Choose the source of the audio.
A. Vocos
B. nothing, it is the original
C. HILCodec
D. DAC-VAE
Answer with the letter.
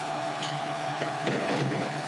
C